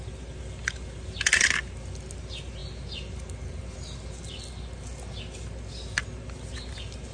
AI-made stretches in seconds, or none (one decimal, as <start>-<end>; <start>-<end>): none

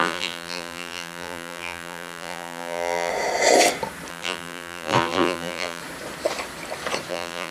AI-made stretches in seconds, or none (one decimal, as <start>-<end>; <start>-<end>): 0.0-3.1; 4.1-5.8; 7.1-7.5

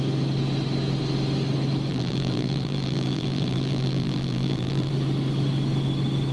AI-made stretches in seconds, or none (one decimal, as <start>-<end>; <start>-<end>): 1.9-4.9

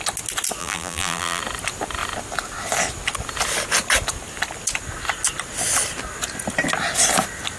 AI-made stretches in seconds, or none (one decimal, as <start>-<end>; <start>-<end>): 0.6-1.4

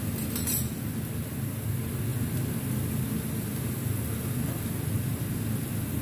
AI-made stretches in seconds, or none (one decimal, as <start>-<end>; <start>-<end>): none